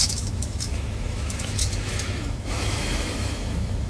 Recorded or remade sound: remade